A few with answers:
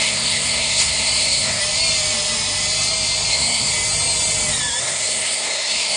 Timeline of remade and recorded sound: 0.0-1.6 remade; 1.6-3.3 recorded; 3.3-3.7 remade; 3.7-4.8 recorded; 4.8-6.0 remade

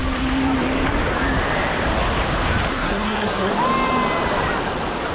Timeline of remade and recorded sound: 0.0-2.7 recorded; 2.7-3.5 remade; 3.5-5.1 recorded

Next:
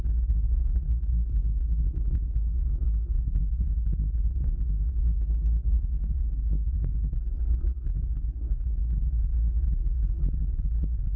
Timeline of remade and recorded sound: 0.0-9.2 remade; 9.2-11.2 recorded

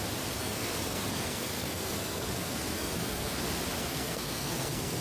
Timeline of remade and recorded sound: 0.0-0.4 recorded; 0.4-3.4 remade; 3.4-3.8 recorded; 3.8-5.0 remade

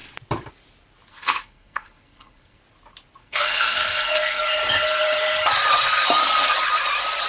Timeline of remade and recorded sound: 0.0-1.1 recorded; 1.1-2.6 remade; 2.6-3.2 recorded; 3.2-4.4 remade; 4.4-7.3 recorded

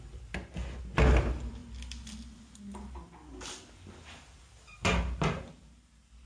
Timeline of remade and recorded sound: 0.0-6.3 recorded

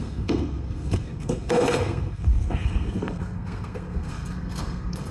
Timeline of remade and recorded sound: 0.0-5.1 remade

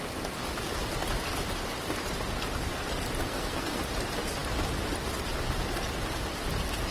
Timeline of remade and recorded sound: 0.0-3.2 recorded; 3.2-3.8 remade; 3.8-6.9 recorded